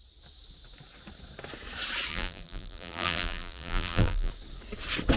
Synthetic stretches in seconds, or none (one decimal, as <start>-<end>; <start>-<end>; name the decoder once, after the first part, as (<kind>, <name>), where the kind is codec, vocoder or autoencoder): 2.1-4.3 (vocoder, BigVGAN v2)